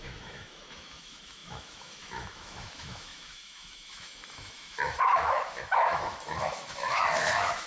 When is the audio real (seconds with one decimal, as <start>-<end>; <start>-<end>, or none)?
none